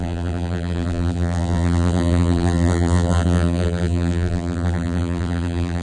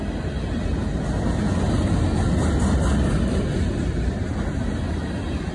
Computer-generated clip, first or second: first